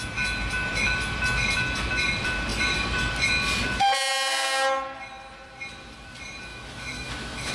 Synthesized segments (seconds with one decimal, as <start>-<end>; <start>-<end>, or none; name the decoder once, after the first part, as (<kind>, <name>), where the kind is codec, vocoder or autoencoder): 6.5-7.5 (autoencoder, DAC-VAE)